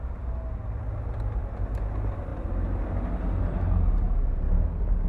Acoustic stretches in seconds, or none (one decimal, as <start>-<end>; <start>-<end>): 0.0-5.1